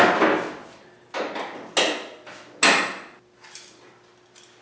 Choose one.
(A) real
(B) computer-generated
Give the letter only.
A